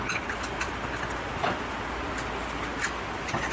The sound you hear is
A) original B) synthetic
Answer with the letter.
A